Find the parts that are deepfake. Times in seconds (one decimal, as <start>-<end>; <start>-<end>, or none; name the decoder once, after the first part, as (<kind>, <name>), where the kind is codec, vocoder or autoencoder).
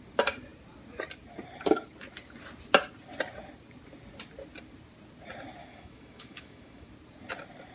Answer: 5.6-6.9 (autoencoder, DAC-VAE)